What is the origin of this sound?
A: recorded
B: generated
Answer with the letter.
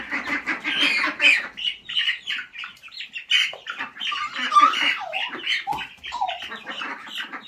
B